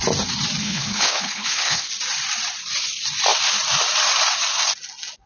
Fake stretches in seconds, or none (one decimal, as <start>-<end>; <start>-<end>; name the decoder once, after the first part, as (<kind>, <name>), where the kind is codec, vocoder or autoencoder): 0.6-1.9 (codec, HILCodec)